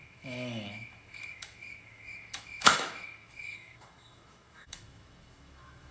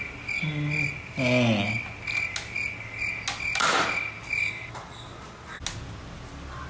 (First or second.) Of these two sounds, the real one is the second